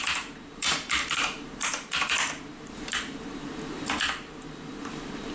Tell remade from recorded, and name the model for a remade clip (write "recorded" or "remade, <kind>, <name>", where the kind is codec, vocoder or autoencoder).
remade, vocoder, BigVGAN v2